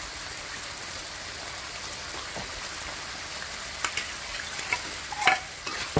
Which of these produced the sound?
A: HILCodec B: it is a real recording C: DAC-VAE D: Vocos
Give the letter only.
B